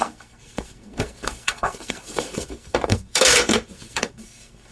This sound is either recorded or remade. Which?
remade